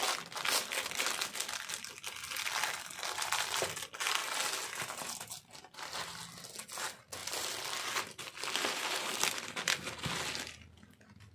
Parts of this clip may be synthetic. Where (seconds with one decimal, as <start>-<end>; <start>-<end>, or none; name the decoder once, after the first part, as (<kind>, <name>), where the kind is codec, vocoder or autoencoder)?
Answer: none